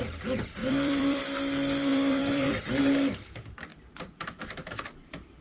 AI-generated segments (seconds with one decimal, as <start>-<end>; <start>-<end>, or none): 0.6-1.2; 1.9-2.8; 3.7-4.4